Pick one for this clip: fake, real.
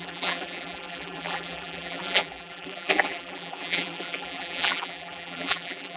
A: fake